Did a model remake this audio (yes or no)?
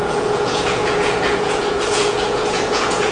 yes